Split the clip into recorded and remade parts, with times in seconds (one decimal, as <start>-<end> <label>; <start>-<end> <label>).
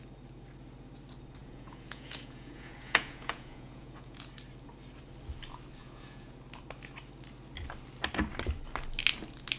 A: 0.0-1.4 recorded; 1.4-4.3 remade; 4.3-5.8 recorded; 5.8-6.4 remade; 6.4-9.6 recorded